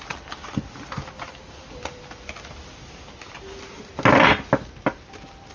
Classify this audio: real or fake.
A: real